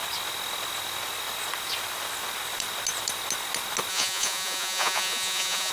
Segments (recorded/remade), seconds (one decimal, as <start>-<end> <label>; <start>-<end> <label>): 0.0-3.9 recorded; 3.9-5.7 remade